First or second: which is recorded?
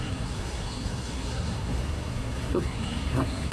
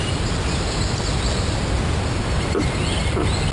second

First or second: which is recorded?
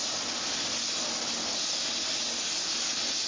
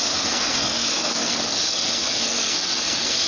first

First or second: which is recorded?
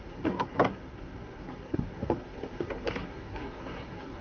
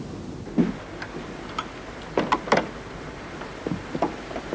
second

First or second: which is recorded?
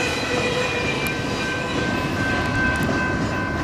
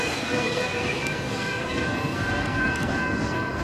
first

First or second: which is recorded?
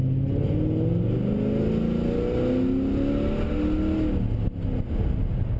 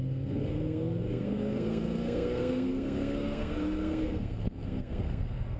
first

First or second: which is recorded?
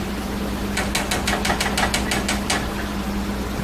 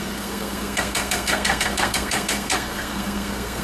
first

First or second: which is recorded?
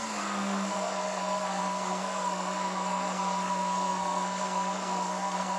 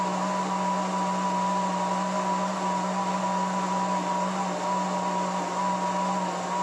second